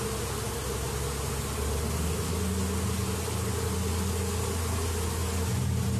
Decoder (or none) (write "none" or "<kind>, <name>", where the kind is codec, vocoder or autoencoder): none